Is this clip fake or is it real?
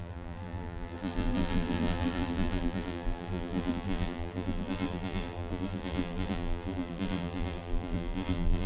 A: fake